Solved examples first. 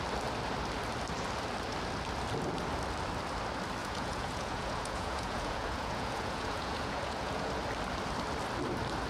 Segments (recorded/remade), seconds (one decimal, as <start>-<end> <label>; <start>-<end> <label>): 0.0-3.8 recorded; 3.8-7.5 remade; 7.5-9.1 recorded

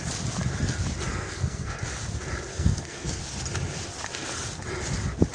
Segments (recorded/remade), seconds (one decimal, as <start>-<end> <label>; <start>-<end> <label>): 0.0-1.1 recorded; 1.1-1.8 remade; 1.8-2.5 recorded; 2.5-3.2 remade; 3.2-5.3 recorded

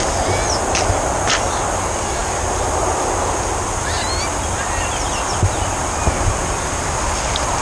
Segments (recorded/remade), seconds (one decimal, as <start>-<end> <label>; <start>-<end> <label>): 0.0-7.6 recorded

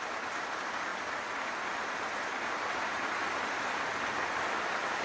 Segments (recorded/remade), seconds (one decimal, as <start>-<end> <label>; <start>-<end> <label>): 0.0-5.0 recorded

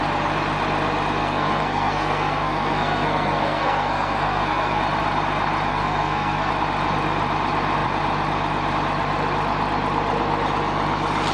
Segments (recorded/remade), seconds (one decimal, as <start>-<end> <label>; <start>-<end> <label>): 0.0-1.2 recorded; 1.2-4.8 remade; 4.8-5.7 recorded; 5.7-6.5 remade; 6.5-11.3 recorded

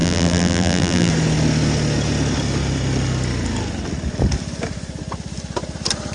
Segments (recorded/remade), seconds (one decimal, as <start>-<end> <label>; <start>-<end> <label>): 0.0-1.1 remade; 1.1-6.1 recorded

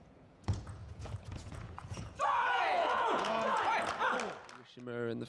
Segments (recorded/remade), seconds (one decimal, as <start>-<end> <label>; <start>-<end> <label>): 0.0-3.9 remade; 3.9-5.3 recorded